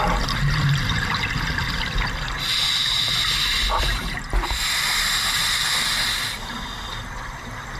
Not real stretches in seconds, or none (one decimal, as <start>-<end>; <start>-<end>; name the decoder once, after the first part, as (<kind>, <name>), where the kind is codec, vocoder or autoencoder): none